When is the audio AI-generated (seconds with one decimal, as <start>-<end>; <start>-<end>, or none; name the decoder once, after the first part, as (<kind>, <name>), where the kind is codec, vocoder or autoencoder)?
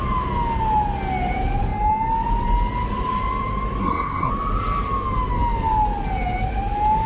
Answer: 3.8-4.3 (codec, SNAC)